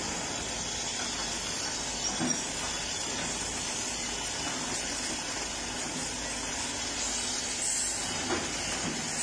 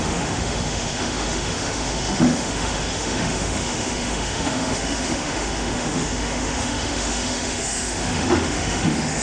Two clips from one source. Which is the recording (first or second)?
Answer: first